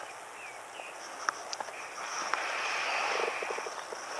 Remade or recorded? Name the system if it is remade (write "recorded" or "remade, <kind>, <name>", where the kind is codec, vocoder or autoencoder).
recorded